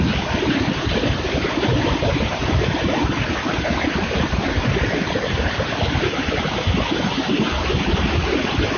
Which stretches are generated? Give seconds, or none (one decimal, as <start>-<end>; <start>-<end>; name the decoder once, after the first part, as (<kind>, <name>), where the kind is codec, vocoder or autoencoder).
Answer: 2.4-6.9 (vocoder, BigVGAN v2)